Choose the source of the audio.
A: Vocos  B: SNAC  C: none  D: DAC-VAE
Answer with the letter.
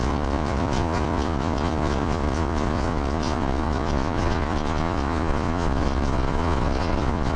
A